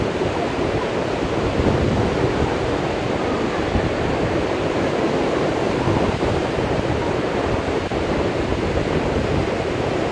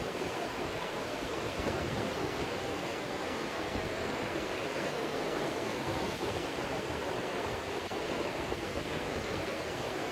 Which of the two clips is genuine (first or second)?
first